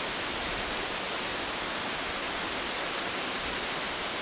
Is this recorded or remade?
recorded